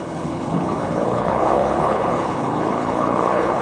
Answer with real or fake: fake